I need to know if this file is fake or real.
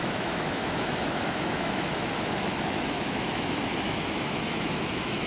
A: fake